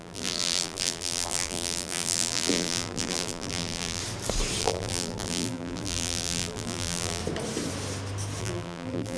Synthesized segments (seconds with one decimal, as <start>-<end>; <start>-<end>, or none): 0.0-4.0; 4.6-7.2; 8.4-9.2